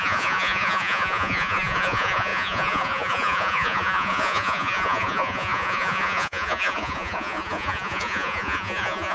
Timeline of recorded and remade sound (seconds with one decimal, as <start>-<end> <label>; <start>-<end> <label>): 0.0-9.1 remade

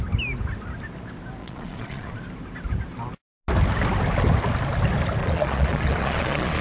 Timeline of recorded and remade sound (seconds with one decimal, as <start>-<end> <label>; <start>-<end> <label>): 0.0-1.4 recorded; 1.4-2.2 remade; 2.2-5.2 recorded; 5.2-6.6 remade

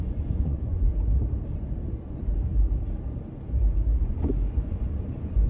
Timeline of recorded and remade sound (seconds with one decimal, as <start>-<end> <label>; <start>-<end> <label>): 0.0-0.9 remade; 0.9-2.0 recorded; 2.0-2.5 remade; 2.5-4.0 recorded; 4.0-5.5 remade

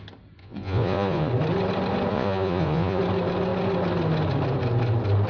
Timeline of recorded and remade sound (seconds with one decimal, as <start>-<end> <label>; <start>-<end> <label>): 0.0-0.4 recorded; 0.4-1.3 remade; 1.3-2.1 recorded; 2.1-3.0 remade; 3.0-5.3 recorded

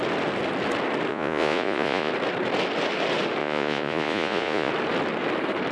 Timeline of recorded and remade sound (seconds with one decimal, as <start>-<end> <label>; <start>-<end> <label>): 0.0-1.1 recorded; 1.1-2.1 remade; 2.1-3.4 recorded; 3.4-4.7 remade; 4.7-5.7 recorded

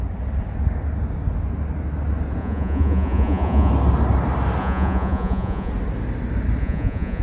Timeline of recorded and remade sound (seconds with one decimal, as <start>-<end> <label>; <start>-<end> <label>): 0.0-2.4 recorded; 2.4-3.7 remade; 3.7-4.6 recorded; 4.6-5.7 remade; 5.7-6.6 recorded; 6.6-7.2 remade

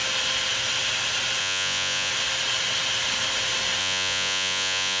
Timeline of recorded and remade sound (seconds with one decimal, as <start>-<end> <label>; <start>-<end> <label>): 0.0-1.4 recorded; 1.4-2.1 remade; 2.1-3.8 recorded; 3.8-5.0 remade